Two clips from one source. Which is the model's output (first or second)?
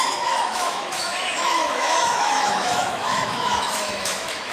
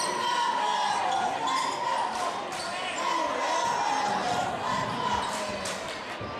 first